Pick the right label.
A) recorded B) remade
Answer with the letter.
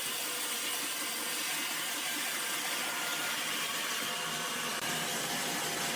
B